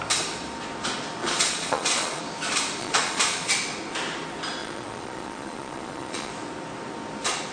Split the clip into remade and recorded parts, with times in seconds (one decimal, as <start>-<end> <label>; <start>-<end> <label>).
0.0-1.2 recorded; 1.2-2.2 remade; 2.2-2.8 recorded; 2.8-3.5 remade; 3.5-4.6 recorded; 4.6-6.3 remade; 6.3-7.5 recorded